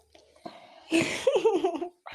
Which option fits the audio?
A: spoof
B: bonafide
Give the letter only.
B